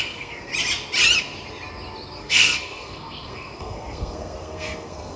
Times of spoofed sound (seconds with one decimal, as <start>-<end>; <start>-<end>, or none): 0.0-0.5; 2.2-5.2